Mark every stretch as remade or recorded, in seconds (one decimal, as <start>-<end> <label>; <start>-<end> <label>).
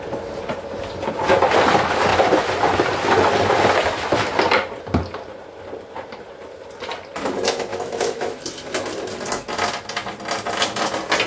0.0-7.7 recorded; 7.7-8.4 remade; 8.4-11.3 recorded